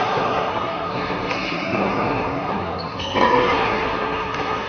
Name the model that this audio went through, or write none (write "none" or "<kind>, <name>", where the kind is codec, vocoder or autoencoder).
codec, SNAC